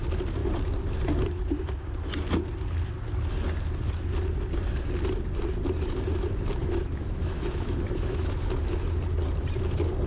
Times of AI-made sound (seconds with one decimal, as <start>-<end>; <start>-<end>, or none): 6.6-8.6